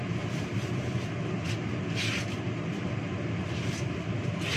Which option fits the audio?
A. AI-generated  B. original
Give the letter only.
B